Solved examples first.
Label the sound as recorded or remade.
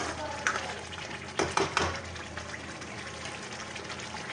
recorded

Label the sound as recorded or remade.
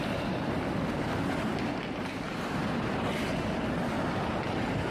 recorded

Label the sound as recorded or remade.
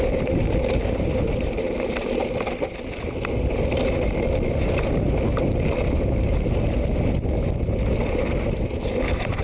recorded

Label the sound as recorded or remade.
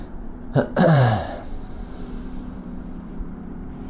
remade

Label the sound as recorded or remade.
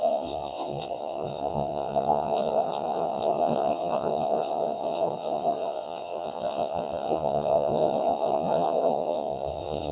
remade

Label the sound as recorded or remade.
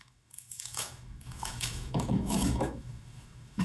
remade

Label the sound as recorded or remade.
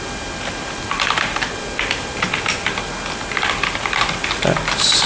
recorded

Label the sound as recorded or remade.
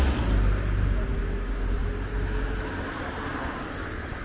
recorded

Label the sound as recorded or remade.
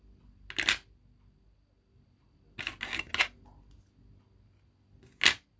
recorded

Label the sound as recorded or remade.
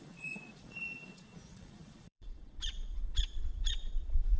remade